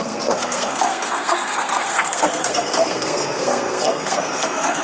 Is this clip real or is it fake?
fake